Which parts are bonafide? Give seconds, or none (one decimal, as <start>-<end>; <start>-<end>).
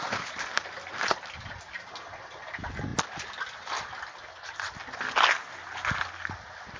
0.0-6.8